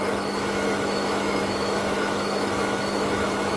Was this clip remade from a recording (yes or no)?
yes